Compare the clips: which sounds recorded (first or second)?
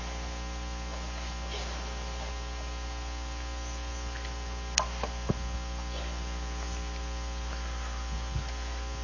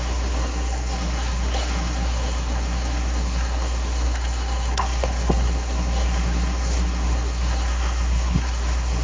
first